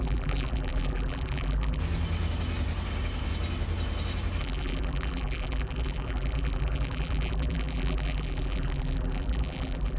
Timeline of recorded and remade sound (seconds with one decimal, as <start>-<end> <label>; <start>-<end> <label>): 0.0-1.8 remade; 1.8-4.4 recorded; 4.4-10.0 remade